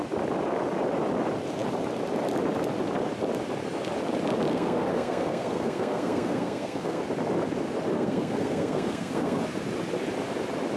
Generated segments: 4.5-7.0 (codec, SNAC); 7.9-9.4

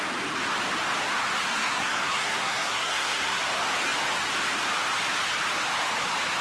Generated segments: 1.5-3.4 (codec, SNAC)

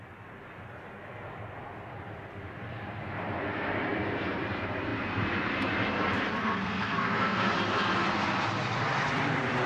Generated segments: 6.4-7.5 (codec, SNAC)